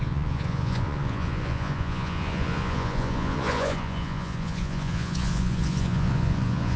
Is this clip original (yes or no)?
no